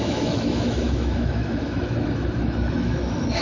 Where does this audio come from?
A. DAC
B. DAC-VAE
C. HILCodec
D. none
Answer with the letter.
B